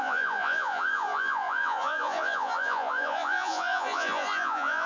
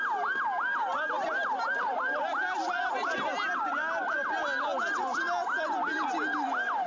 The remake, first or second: first